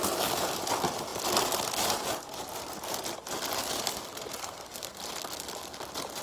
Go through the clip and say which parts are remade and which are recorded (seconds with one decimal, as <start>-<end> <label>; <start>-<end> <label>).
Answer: 0.0-4.4 recorded; 4.4-5.0 remade; 5.0-6.2 recorded